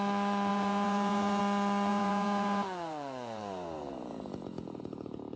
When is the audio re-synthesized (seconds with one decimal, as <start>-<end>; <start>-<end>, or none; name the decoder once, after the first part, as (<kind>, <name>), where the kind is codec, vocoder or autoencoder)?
0.5-1.4 (vocoder, Vocos); 1.9-5.4